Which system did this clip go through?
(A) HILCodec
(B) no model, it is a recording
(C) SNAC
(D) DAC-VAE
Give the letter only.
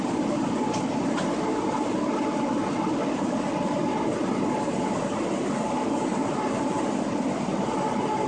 B